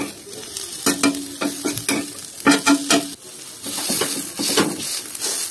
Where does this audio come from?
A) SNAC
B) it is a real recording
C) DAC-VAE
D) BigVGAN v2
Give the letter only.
B